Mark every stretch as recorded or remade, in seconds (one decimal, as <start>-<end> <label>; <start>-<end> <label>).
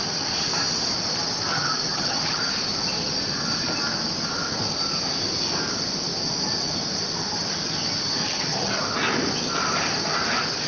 0.0-1.5 recorded; 1.5-2.4 remade; 2.4-8.3 recorded; 8.3-8.8 remade; 8.8-10.7 recorded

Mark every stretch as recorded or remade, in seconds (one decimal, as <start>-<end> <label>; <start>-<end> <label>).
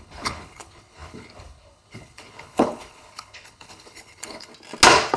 0.0-4.5 remade; 4.5-5.2 recorded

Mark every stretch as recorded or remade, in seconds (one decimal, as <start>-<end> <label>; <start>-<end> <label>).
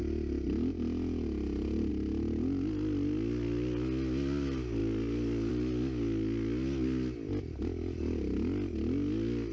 0.0-9.5 recorded